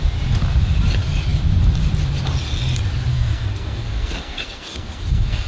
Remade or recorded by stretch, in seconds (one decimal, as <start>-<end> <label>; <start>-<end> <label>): 0.0-3.1 recorded; 3.1-5.5 remade